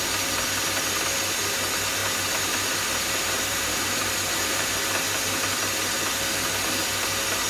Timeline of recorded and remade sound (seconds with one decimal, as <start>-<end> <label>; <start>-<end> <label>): 0.0-2.0 recorded; 2.0-4.7 remade; 4.7-7.5 recorded